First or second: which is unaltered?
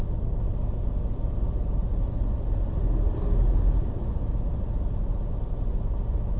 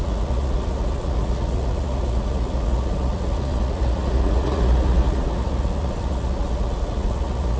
first